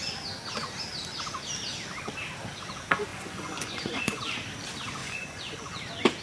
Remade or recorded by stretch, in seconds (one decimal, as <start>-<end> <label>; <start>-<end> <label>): 0.0-3.1 recorded; 3.1-4.2 remade; 4.2-5.0 recorded; 5.0-5.8 remade; 5.8-6.2 recorded

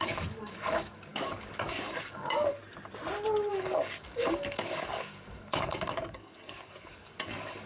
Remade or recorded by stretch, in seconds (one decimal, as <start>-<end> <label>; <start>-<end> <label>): 0.0-2.6 remade; 2.6-3.5 recorded; 3.5-7.7 remade

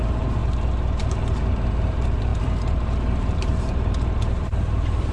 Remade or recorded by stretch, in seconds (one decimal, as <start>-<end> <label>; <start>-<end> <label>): 0.0-0.4 remade; 0.4-1.0 recorded; 1.0-5.1 remade

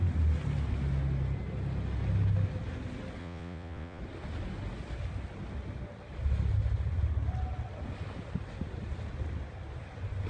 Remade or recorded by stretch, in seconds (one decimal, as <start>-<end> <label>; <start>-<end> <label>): 0.0-3.2 recorded; 3.2-4.0 remade; 4.0-10.3 recorded

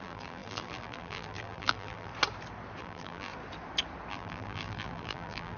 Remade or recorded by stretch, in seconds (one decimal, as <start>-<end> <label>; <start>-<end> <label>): 0.0-2.1 remade; 2.1-2.8 recorded; 2.8-3.3 remade; 3.3-4.1 recorded; 4.1-5.6 remade

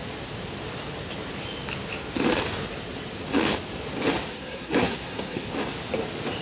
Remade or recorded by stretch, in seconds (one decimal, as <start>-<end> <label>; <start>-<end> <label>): 0.0-4.3 recorded; 4.3-5.5 remade; 5.5-6.4 recorded

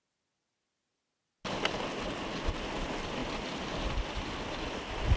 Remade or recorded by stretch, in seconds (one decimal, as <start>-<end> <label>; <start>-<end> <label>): 0.0-5.2 recorded